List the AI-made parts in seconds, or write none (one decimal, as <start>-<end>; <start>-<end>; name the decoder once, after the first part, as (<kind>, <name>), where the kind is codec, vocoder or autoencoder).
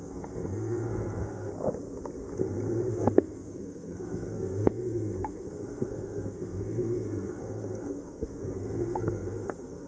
0.0-1.5 (codec, SNAC); 2.9-9.9